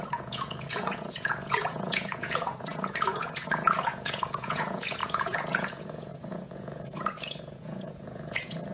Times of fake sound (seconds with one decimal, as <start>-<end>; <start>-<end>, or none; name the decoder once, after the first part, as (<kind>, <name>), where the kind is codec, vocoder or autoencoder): 0.0-8.7 (vocoder, Vocos)